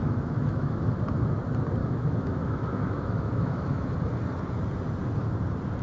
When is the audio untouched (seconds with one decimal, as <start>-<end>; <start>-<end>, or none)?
0.8-1.8; 3.9-5.8